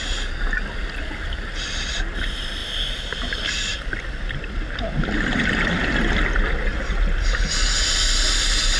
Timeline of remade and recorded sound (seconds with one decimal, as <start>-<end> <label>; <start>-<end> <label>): 0.0-8.8 recorded